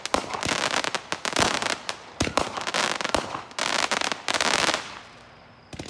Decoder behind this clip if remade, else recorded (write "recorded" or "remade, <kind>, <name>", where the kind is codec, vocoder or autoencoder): recorded